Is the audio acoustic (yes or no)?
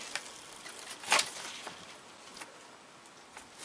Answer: yes